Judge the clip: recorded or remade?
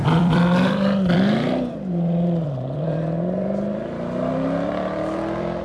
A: remade